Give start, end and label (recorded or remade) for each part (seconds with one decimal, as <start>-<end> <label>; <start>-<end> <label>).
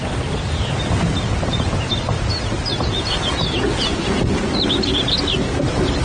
0.0-6.0 recorded